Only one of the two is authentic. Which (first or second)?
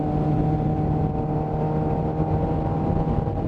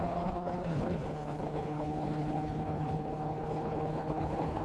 first